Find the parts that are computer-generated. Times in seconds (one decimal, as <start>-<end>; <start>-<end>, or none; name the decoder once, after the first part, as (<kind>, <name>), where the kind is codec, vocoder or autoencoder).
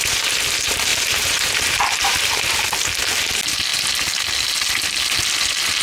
0.9-2.6 (vocoder, BigVGAN v2)